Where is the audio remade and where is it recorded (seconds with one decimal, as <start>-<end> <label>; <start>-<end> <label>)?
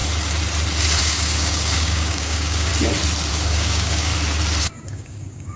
0.0-1.0 recorded; 1.0-2.7 remade; 2.7-3.3 recorded; 3.3-4.1 remade; 4.1-4.6 recorded; 4.6-5.6 remade